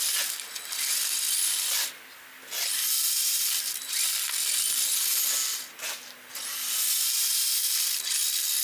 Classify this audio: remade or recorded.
recorded